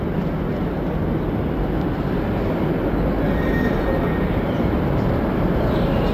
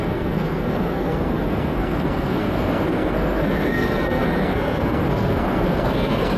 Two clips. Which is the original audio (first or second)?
first